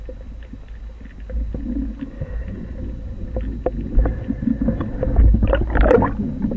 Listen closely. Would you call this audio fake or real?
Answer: real